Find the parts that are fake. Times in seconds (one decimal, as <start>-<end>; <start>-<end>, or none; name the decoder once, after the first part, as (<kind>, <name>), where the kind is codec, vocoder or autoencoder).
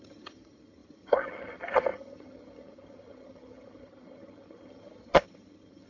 0.0-5.9 (vocoder, HiFi-GAN)